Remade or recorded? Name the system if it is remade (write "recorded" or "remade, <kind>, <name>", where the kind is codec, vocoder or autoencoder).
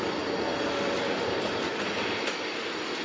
recorded